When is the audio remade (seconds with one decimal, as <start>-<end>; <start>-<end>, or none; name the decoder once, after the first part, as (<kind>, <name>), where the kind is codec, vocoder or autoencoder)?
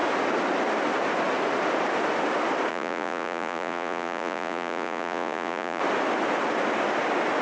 2.7-5.8 (vocoder, Vocos)